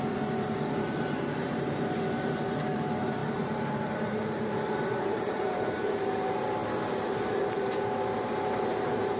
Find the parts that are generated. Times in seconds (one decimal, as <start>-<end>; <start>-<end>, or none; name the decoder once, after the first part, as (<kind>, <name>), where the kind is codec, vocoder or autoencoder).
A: 0.0-6.6 (vocoder, BigVGAN v2); 7.4-9.2